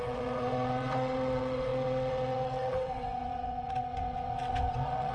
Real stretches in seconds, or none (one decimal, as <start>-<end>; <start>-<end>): none